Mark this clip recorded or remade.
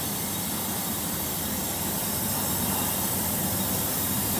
remade